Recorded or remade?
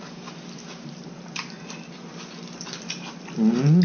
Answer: recorded